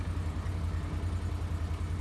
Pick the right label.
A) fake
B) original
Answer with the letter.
B